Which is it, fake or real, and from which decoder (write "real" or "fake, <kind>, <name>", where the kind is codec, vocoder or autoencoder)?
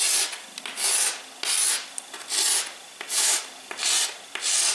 real